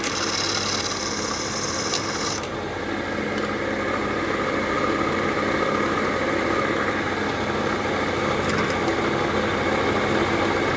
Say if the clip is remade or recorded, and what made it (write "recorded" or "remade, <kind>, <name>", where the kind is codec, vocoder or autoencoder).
recorded